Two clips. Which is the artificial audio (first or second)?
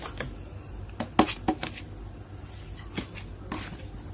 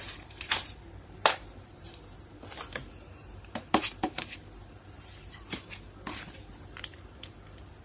second